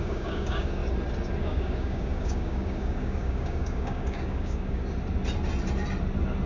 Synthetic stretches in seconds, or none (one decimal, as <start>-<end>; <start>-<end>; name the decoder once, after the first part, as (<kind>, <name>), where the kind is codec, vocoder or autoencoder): 0.0-0.8 (codec, DAC); 1.4-4.8